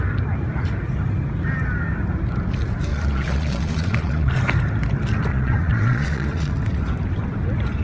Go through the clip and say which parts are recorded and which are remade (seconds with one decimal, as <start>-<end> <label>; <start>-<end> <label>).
0.0-2.9 recorded; 2.9-4.3 remade; 4.3-5.3 recorded; 5.3-6.5 remade; 6.5-7.8 recorded